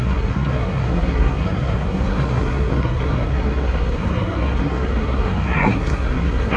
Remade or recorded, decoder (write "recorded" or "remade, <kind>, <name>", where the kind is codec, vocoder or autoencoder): remade, codec, SNAC